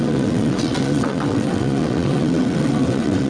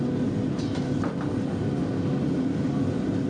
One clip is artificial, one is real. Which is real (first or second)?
second